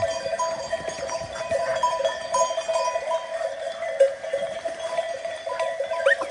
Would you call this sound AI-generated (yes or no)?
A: yes